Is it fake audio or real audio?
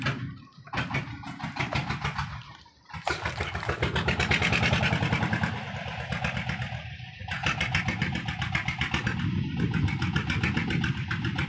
real